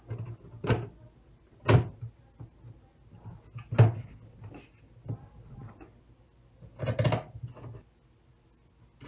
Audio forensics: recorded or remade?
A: recorded